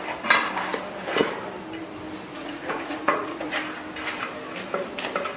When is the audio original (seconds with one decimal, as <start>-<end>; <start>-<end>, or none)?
0.0-2.3; 3.6-5.4